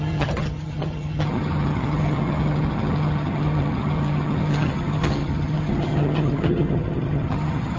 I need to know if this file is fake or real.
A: fake